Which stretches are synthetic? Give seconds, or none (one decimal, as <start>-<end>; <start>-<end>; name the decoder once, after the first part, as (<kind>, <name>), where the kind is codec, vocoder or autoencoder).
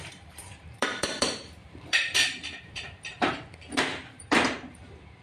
0.0-5.2 (vocoder, BigVGAN v2)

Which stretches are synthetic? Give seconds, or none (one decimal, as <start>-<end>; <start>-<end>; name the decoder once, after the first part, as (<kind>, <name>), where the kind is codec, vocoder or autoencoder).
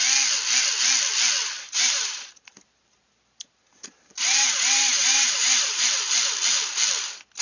1.4-5.8 (vocoder, BigVGAN v2)